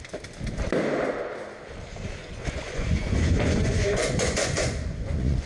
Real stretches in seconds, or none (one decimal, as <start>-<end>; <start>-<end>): 0.0-2.2